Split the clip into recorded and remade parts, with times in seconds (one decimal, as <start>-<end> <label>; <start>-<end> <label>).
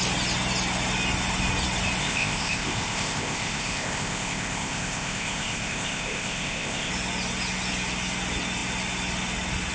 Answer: 0.0-2.0 recorded; 2.0-6.9 remade; 6.9-9.7 recorded